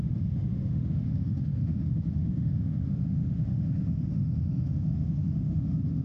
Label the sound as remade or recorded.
remade